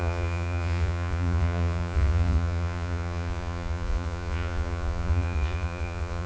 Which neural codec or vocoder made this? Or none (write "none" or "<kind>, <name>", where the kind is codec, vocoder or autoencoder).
vocoder, Vocos